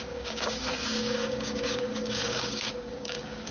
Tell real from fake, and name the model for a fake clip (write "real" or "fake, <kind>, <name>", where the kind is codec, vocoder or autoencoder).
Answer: fake, codec, DAC